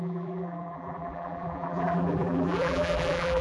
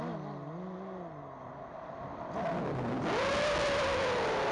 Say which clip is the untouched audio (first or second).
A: second